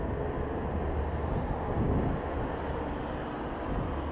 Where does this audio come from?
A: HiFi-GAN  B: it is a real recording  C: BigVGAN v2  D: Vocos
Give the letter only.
B